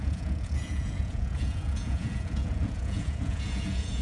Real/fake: fake